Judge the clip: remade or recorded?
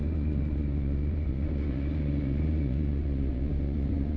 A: remade